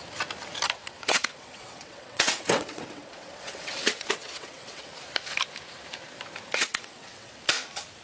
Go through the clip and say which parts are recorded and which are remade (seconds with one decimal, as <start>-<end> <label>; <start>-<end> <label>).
0.0-0.8 recorded; 0.8-4.9 remade; 4.9-6.6 recorded; 6.6-7.3 remade; 7.3-8.0 recorded